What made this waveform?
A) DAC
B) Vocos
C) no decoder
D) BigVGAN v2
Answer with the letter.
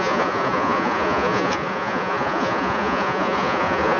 B